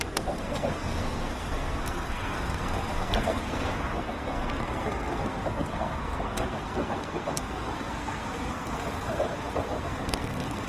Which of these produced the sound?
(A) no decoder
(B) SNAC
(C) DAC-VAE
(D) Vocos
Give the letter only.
B